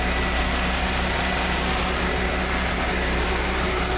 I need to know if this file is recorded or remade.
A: recorded